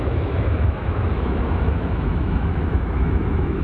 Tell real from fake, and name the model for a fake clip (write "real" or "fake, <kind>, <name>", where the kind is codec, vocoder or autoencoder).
fake, autoencoder, DAC-VAE